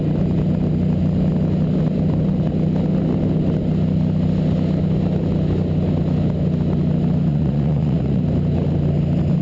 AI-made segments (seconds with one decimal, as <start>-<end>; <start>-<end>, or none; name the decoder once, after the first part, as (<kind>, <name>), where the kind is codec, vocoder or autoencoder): 7.3-8.2 (vocoder, Vocos)